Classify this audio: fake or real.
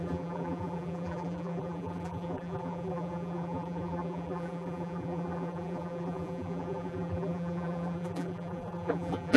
fake